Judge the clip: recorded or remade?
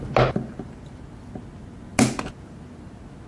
recorded